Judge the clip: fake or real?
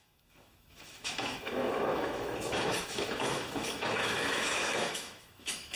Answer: fake